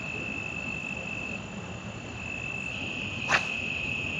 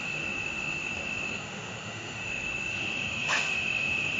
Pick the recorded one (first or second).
first